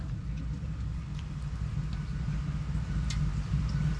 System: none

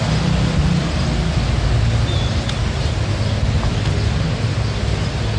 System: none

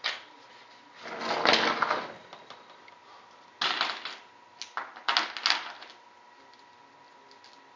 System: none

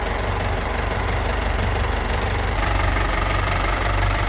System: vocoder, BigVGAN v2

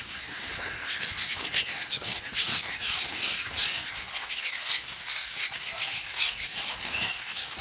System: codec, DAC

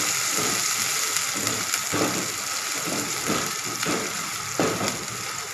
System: none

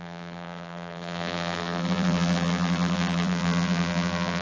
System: vocoder, BigVGAN v2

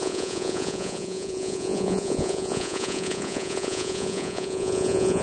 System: vocoder, Vocos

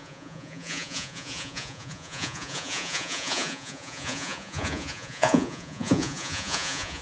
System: vocoder, Vocos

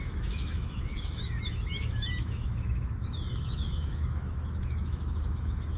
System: autoencoder, DAC-VAE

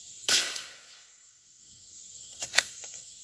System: codec, SNAC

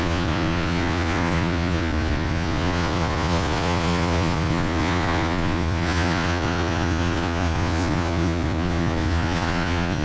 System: vocoder, Vocos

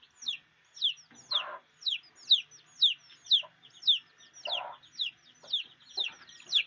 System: none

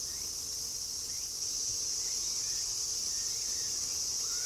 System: none